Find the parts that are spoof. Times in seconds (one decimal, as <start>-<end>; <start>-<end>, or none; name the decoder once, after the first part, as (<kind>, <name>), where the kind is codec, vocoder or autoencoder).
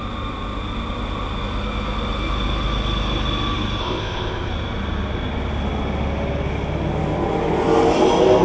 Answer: 3.8-4.5 (codec, ZipCodec)